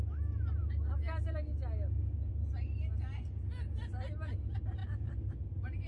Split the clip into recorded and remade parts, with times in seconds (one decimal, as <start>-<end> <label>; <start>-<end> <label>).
0.0-5.9 recorded